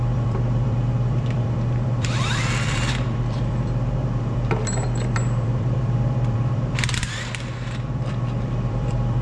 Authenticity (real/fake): fake